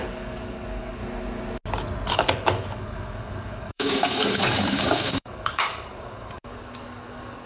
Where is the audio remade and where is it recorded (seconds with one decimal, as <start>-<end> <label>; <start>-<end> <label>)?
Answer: 0.0-1.0 remade; 1.0-2.1 recorded; 2.1-7.5 remade